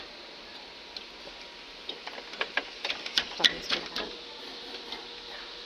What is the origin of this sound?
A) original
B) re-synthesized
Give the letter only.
A